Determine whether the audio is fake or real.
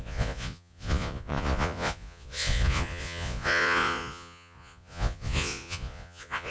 fake